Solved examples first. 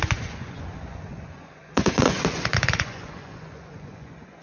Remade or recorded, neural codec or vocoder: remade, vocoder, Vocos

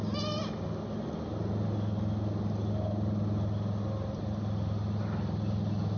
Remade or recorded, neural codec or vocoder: recorded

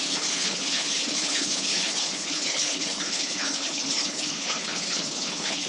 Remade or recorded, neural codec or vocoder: remade, codec, HILCodec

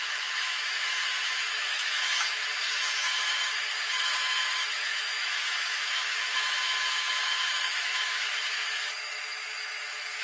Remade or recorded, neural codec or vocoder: remade, autoencoder, DAC-VAE